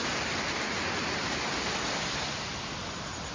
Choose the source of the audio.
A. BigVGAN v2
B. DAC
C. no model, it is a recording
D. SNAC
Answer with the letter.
C